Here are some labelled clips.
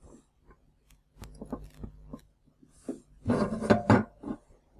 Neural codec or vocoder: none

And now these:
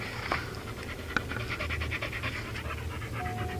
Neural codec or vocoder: none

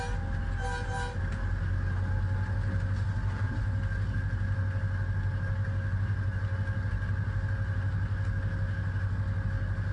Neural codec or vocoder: none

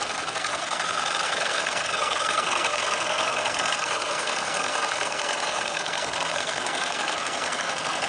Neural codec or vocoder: codec, SNAC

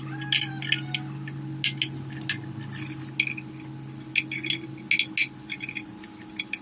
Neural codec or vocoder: none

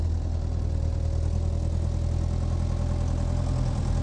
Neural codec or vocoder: none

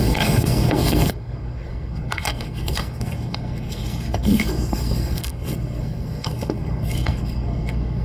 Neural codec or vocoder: codec, SNAC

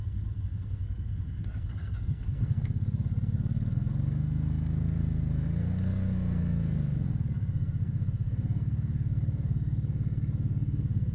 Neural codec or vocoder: codec, SNAC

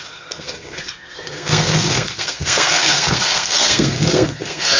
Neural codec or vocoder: codec, SNAC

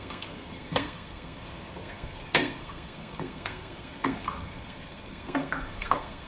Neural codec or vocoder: codec, SNAC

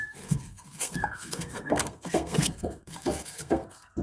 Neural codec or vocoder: codec, SNAC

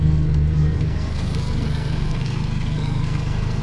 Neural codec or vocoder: codec, SNAC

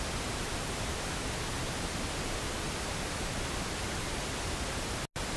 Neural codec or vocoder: none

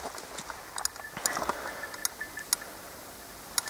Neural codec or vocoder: none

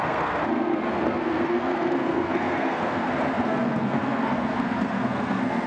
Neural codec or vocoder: codec, SNAC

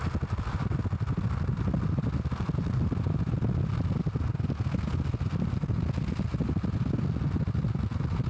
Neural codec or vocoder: none